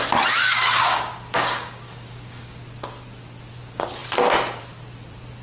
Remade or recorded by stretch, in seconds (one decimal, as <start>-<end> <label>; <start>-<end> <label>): 0.0-0.4 recorded; 0.4-2.6 remade; 2.6-5.4 recorded